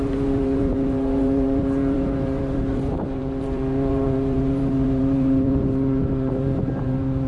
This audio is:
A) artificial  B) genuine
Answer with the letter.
A